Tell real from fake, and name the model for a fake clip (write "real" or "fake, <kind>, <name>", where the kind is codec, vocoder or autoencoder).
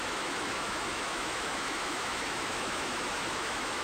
fake, autoencoder, DAC-VAE